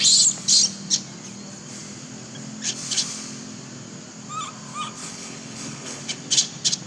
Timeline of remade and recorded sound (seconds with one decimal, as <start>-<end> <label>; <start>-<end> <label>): 0.0-5.0 recorded; 5.0-6.0 remade; 6.0-6.9 recorded